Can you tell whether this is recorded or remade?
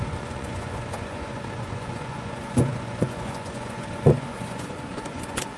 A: remade